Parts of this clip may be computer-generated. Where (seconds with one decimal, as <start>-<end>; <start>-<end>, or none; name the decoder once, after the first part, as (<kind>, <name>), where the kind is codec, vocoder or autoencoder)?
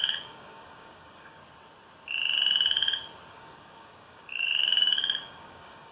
0.0-1.4 (codec, DAC); 3.3-5.9